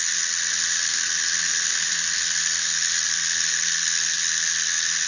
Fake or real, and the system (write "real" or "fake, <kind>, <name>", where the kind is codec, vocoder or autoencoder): real